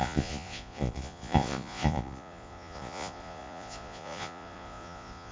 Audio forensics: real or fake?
fake